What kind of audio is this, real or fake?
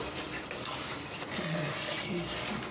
real